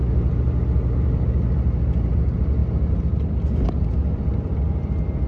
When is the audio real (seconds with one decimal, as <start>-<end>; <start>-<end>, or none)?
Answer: 0.0-5.3